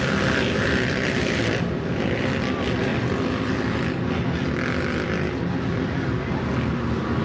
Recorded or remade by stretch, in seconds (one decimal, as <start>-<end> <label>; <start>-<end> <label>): 0.0-0.6 recorded; 0.6-2.3 remade; 2.3-2.9 recorded; 2.9-4.1 remade; 4.1-7.2 recorded